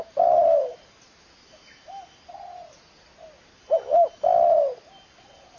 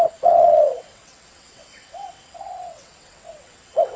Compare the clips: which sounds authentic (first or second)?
first